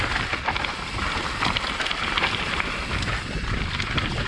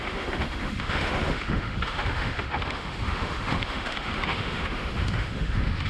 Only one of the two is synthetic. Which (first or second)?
second